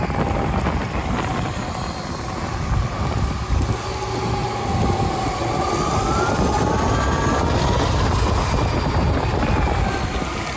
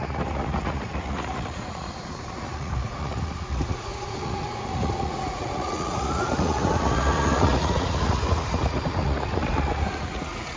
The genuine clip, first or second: first